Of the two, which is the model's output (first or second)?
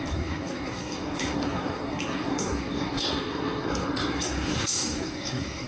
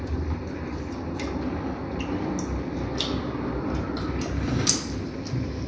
first